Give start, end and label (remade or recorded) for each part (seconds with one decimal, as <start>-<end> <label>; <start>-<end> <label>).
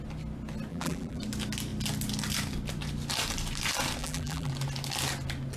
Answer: 0.0-0.7 recorded; 0.7-1.2 remade; 1.2-4.0 recorded; 4.0-4.5 remade; 4.5-5.6 recorded